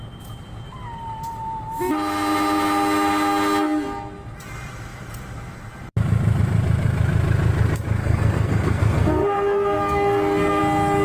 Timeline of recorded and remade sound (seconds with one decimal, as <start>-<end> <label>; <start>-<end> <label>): 0.0-8.0 recorded; 8.0-10.6 remade; 10.6-11.0 recorded